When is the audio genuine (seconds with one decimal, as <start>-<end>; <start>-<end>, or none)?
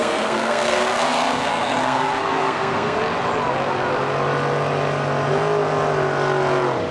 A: 3.0-6.9